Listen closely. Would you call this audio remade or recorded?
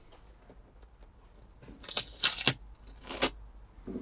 recorded